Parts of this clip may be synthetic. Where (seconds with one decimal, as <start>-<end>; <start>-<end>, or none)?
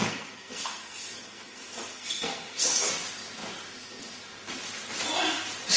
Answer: 0.0-2.9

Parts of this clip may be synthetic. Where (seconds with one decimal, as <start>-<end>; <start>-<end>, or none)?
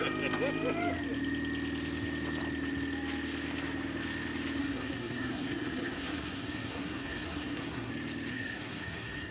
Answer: 4.6-7.9; 8.3-9.3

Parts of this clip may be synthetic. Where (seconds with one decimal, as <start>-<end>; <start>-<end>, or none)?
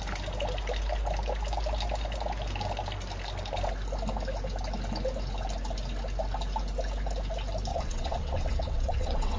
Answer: 7.7-9.4